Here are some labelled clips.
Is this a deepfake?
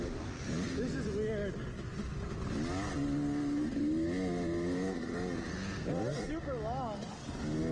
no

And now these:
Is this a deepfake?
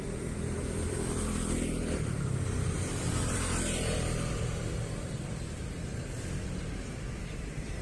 yes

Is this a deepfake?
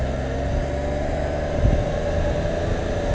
no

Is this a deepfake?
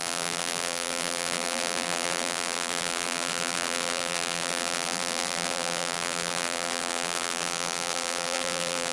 yes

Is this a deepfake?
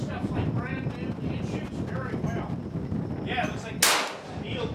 no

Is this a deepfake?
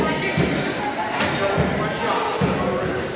no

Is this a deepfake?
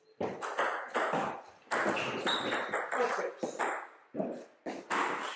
no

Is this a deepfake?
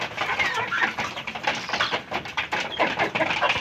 yes